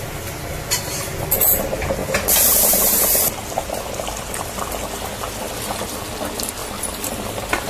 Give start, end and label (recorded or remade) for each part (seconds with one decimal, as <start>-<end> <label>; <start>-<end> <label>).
0.0-7.7 recorded

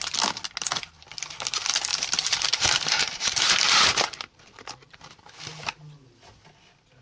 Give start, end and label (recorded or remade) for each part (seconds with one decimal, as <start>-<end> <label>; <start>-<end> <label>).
0.0-1.9 recorded; 1.9-5.1 remade; 5.1-7.0 recorded